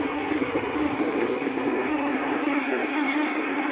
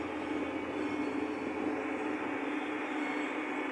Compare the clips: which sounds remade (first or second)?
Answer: first